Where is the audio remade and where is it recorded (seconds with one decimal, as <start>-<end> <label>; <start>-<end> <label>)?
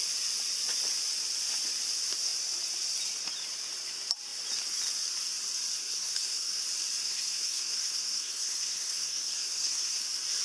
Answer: 0.0-5.8 recorded; 5.8-6.6 remade; 6.6-7.0 recorded; 7.0-10.0 remade; 10.0-10.4 recorded